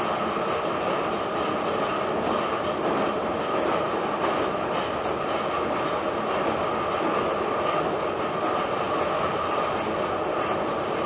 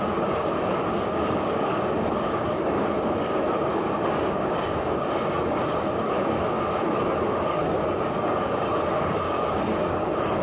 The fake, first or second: second